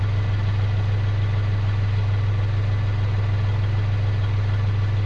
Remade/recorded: recorded